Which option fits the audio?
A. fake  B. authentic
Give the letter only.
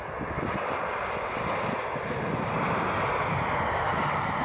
B